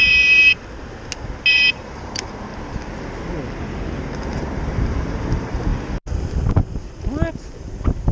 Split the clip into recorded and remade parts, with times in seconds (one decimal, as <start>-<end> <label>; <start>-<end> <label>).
0.0-0.6 remade; 0.6-1.5 recorded; 1.5-2.5 remade; 2.5-4.0 recorded; 4.0-5.7 remade; 5.7-7.3 recorded; 7.3-8.1 remade